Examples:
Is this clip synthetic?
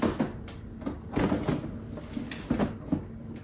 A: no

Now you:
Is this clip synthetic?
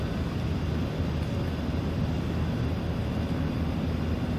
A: no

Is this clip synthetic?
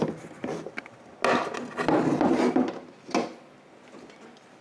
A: no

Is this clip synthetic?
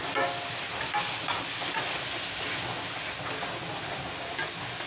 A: no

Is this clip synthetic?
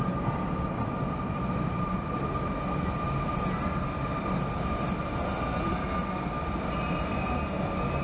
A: no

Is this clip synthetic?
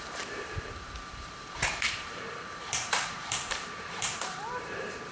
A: yes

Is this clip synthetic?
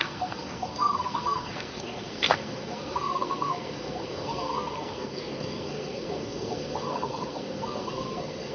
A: yes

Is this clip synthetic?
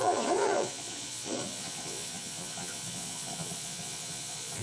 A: yes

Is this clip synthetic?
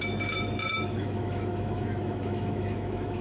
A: yes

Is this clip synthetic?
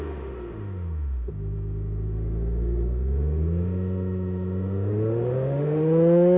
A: yes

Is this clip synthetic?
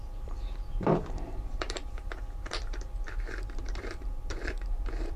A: yes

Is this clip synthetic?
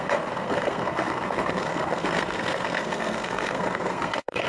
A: yes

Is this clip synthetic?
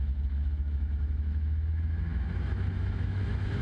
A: yes